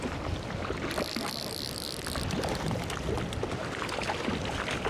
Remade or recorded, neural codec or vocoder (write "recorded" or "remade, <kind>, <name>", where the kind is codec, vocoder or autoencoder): recorded